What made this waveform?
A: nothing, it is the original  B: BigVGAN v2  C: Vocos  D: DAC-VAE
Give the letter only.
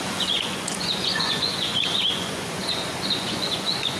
C